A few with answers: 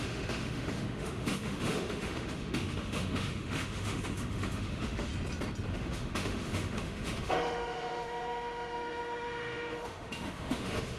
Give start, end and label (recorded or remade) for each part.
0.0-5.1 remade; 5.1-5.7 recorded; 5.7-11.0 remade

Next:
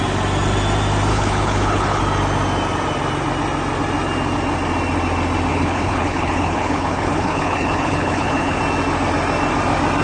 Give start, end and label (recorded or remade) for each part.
0.0-1.1 recorded; 1.1-2.0 remade; 2.0-5.5 recorded; 5.5-8.6 remade; 8.6-10.0 recorded

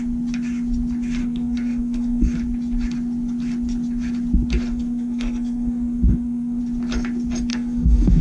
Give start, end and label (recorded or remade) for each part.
0.0-1.2 recorded; 1.2-2.4 remade; 2.4-4.7 recorded; 4.7-6.6 remade; 6.6-7.5 recorded; 7.5-8.2 remade

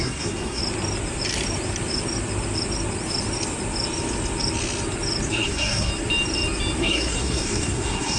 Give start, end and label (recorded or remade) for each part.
0.0-0.6 remade; 0.6-5.3 recorded; 5.3-5.9 remade; 5.9-6.8 recorded; 6.8-8.2 remade

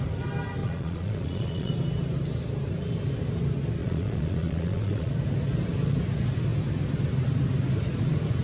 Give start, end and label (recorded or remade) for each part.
0.0-0.6 recorded; 0.6-1.7 remade; 1.7-3.8 recorded; 3.8-5.1 remade; 5.1-8.4 recorded

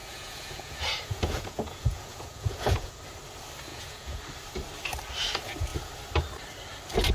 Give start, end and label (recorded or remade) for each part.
0.0-3.0 remade; 3.0-3.7 recorded; 3.7-4.2 remade; 4.2-7.1 recorded

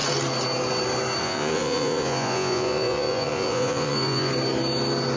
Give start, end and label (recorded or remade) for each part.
0.0-1.2 recorded; 1.2-4.3 remade; 4.3-5.2 recorded

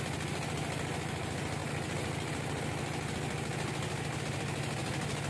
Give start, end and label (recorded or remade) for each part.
0.0-5.3 recorded